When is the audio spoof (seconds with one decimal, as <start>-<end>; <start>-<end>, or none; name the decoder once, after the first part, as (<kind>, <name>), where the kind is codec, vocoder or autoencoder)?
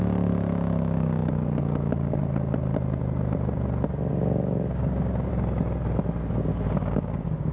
0.0-2.2 (codec, DAC); 4.1-5.3; 6.3-7.5